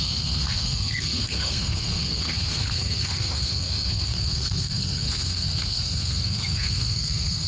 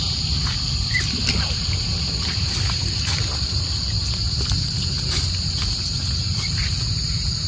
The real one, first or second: second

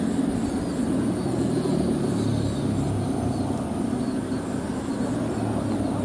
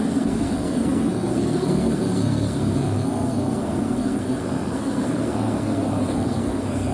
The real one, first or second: first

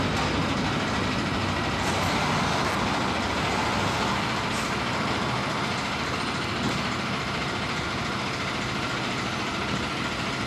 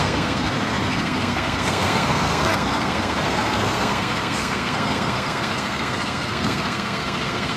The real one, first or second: first